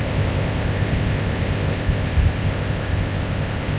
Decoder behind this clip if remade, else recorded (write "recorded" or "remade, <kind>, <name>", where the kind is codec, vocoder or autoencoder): remade, codec, ZipCodec